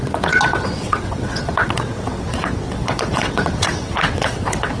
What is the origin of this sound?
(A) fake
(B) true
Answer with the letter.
A